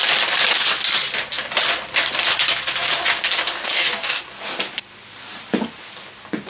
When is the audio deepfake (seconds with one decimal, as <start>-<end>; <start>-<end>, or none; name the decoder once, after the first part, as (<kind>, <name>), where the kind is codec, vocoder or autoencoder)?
3.7-4.2 (codec, DAC)